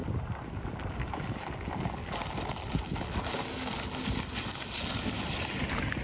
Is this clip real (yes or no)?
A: yes